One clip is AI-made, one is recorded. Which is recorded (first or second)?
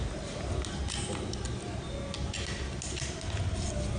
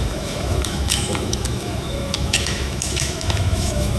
first